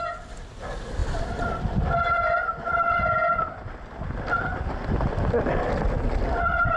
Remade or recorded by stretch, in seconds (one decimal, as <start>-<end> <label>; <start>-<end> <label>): 0.0-6.8 recorded

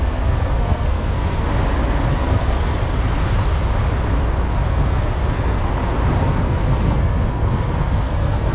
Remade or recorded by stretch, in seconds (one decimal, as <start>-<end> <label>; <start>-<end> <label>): 0.0-1.5 remade; 1.5-2.1 recorded; 2.1-2.7 remade; 2.7-4.7 recorded; 4.7-5.7 remade; 5.7-6.2 recorded; 6.2-8.5 remade

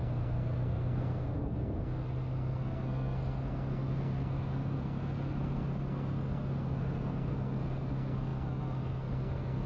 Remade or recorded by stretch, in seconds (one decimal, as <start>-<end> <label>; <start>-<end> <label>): 0.0-9.7 remade

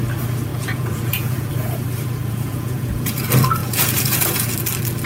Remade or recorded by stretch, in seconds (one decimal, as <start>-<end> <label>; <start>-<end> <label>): 0.0-0.5 recorded; 0.5-1.5 remade; 1.5-2.2 recorded; 2.2-3.2 remade; 3.2-3.6 recorded; 3.6-4.5 remade; 4.5-5.1 recorded

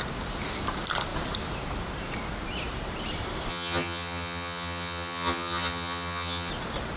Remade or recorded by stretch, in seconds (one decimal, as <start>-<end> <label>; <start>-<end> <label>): 0.0-3.5 recorded; 3.5-6.5 remade; 6.5-7.0 recorded